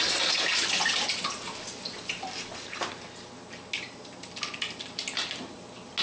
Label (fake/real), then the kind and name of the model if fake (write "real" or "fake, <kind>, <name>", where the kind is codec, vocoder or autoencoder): real